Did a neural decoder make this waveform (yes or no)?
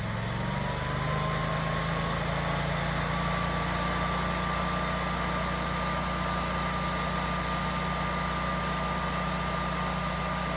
no